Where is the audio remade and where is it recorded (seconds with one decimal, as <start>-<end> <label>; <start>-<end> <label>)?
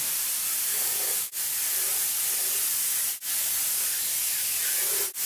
0.0-0.7 recorded; 0.7-1.4 remade; 1.4-5.3 recorded